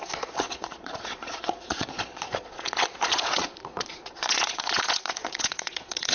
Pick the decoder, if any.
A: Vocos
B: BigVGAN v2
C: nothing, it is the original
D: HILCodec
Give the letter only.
A